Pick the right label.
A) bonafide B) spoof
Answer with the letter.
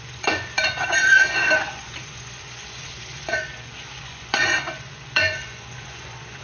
B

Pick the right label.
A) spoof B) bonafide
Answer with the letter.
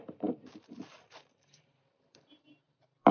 A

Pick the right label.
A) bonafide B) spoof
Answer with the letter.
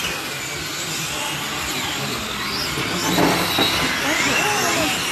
A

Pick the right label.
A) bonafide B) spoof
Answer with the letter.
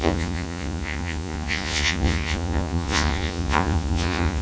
B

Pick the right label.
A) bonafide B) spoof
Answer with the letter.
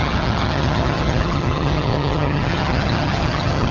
B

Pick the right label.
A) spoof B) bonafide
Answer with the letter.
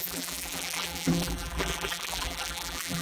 A